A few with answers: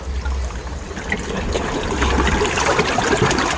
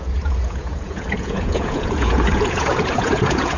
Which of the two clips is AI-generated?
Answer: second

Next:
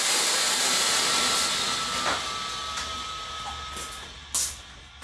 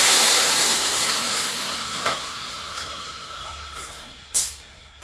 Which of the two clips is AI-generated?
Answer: second